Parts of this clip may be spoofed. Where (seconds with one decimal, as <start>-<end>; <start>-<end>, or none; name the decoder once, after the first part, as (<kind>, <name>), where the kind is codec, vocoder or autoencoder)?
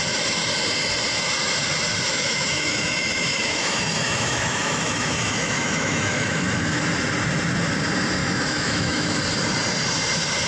2.1-6.8 (autoencoder, DAC-VAE); 8.2-9.2